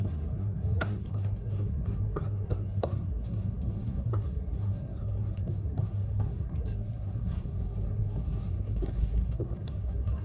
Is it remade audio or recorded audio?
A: remade